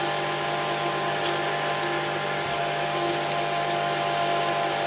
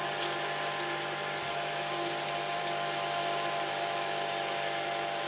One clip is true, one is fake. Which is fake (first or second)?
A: second